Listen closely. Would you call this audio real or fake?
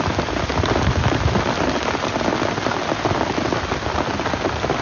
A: real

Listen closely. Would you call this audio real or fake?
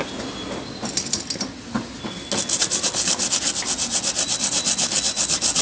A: real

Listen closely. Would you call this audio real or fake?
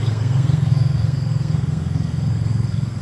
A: fake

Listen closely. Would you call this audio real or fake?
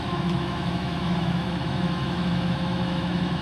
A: fake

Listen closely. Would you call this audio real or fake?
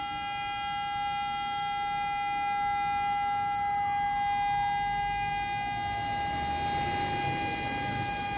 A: real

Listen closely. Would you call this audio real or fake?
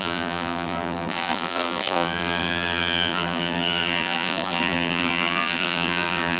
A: fake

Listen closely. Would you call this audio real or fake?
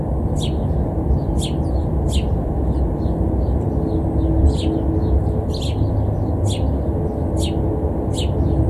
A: real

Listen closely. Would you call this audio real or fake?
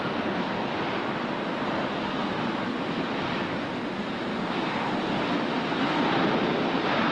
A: real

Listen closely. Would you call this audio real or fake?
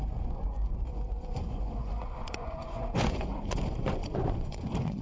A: fake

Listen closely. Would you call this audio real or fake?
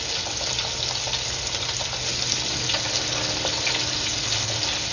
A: real